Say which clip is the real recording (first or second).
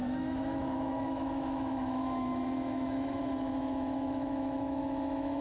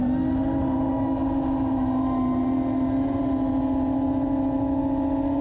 second